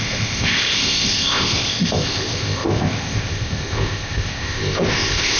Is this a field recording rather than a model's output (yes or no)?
no